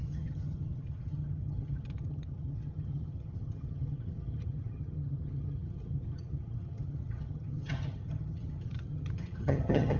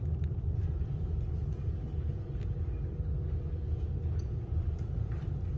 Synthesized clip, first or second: first